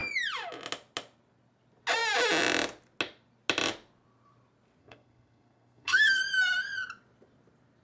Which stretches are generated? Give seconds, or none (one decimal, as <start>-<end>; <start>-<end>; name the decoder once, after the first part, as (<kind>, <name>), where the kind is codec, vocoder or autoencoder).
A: 4.8-6.2 (codec, SNAC)